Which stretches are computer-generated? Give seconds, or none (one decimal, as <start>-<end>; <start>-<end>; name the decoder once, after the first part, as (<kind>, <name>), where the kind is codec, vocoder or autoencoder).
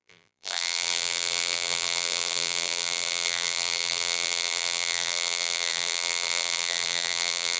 0.0-7.6 (vocoder, BigVGAN v2)